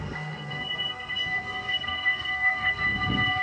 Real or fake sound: fake